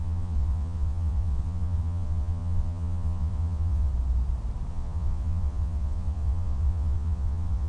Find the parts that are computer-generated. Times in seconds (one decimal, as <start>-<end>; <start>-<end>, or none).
0.0-3.9; 4.7-7.7